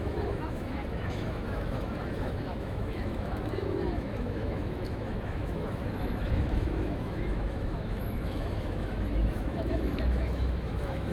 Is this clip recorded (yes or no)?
no